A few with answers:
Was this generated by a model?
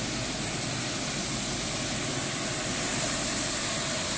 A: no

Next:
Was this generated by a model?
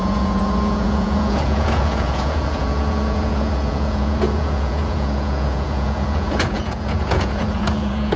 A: yes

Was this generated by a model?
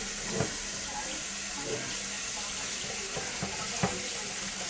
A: no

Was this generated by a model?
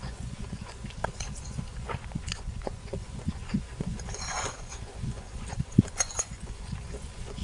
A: yes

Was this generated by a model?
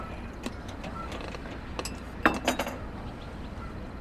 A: no